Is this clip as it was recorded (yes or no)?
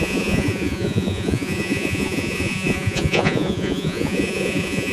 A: no